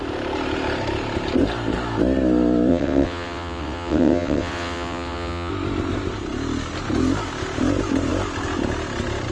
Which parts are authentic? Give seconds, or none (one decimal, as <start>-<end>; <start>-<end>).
0.0-2.7; 5.5-9.3

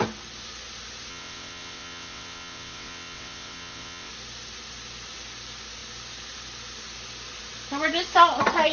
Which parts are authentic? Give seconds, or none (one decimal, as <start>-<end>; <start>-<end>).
0.0-1.1; 4.1-8.7

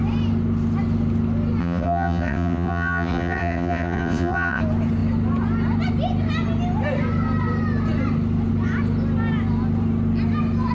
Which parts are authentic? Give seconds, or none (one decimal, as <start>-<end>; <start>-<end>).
0.0-1.6; 4.6-10.7

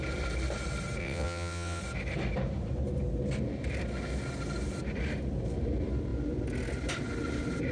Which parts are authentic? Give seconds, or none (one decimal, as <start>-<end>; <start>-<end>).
0.0-1.0; 1.8-7.7

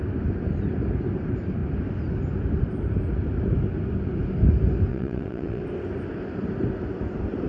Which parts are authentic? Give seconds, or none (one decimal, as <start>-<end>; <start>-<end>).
0.0-4.9; 5.6-7.5